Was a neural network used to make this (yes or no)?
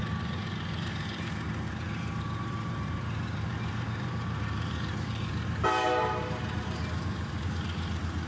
yes